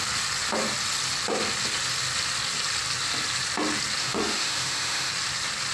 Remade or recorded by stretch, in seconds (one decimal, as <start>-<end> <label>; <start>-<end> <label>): 0.0-4.0 recorded; 4.0-5.1 remade; 5.1-5.7 recorded